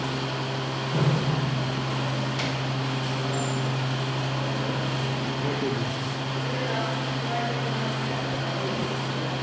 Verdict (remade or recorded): recorded